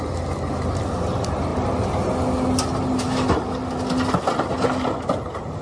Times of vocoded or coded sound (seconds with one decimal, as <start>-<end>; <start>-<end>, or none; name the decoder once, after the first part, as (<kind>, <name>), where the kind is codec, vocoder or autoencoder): none